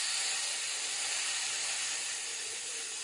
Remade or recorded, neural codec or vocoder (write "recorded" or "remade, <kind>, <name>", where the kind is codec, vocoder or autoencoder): recorded